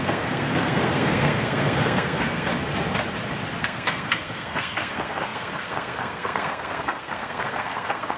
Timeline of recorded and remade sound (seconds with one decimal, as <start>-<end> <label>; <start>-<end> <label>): 0.0-2.5 remade; 2.5-3.6 recorded; 3.6-8.2 remade